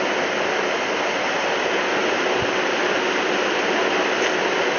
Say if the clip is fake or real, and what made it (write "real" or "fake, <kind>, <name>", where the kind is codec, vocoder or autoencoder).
real